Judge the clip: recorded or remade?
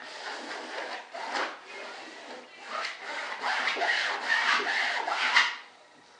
recorded